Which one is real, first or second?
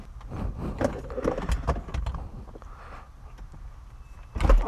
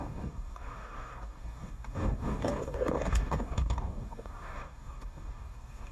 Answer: first